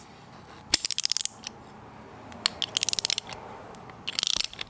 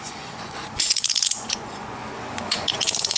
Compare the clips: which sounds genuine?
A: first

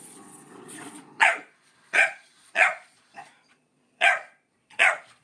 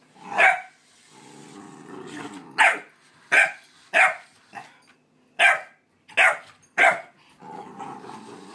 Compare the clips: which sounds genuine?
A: second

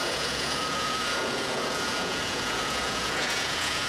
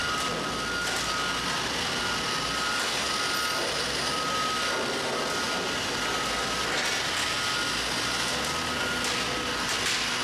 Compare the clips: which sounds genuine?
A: second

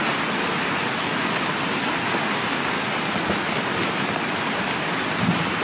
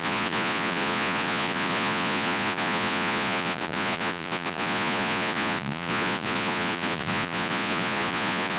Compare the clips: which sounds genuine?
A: first